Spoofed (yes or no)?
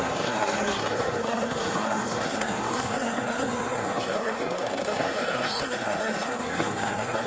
yes